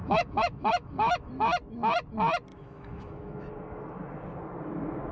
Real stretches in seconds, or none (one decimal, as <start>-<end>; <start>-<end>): 1.3-2.5; 3.5-5.1